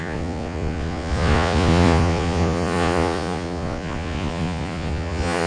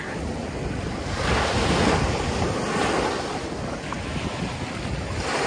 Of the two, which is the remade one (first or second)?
first